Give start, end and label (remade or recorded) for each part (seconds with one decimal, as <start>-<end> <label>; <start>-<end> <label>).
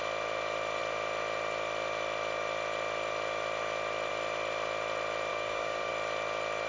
0.0-5.3 recorded; 5.3-5.9 remade; 5.9-6.7 recorded